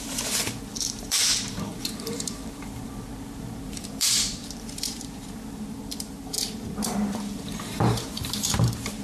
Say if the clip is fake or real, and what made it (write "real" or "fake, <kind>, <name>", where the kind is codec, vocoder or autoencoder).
fake, vocoder, BigVGAN v2